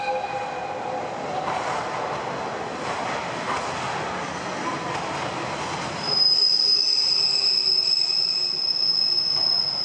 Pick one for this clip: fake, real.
real